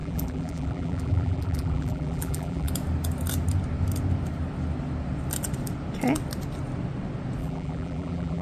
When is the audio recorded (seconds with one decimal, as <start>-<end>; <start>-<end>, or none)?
2.7-7.4